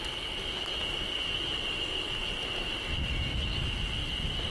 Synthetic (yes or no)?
no